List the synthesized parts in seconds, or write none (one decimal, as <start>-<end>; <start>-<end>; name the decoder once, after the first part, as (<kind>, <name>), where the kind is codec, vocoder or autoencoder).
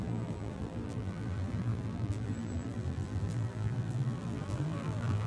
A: 0.0-5.3 (vocoder, BigVGAN v2)